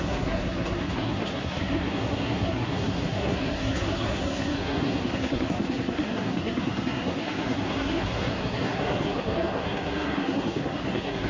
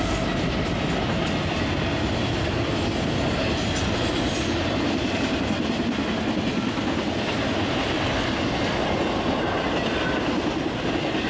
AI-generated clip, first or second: first